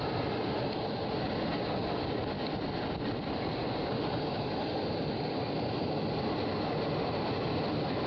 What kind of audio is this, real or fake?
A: real